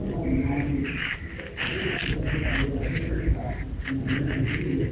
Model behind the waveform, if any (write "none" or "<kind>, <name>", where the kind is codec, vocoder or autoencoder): none